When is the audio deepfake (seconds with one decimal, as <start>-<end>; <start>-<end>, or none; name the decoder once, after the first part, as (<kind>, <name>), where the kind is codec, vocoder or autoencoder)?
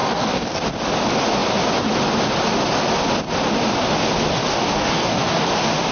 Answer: 0.0-0.6 (codec, DAC); 4.4-5.5